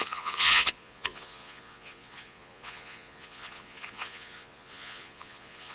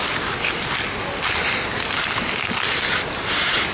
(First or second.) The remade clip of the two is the first